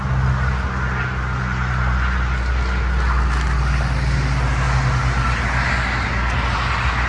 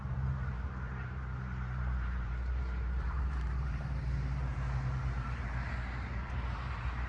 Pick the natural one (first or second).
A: first